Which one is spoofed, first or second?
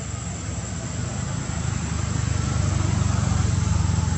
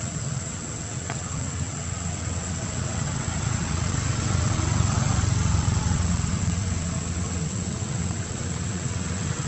second